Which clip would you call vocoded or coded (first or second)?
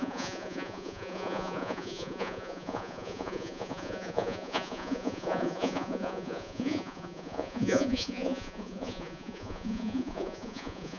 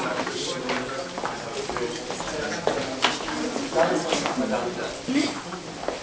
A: first